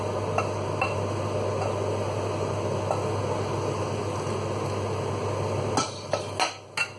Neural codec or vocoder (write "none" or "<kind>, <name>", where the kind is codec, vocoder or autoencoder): none